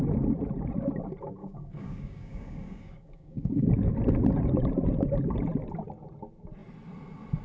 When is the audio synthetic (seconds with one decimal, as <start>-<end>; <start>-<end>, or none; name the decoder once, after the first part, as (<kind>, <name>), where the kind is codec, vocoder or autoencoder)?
1.4-3.7 (codec, DAC)